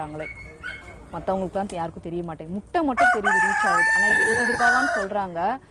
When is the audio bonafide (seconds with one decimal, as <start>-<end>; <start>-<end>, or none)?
0.0-4.1; 4.6-5.7